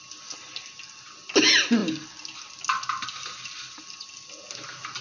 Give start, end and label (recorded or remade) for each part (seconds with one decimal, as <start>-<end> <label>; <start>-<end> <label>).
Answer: 0.0-5.0 recorded